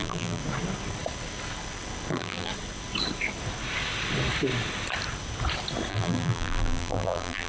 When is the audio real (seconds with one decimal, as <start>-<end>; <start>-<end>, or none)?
0.4-2.1; 2.5-5.9